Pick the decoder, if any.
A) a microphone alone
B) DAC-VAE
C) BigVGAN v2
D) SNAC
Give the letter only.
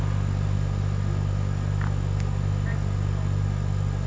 A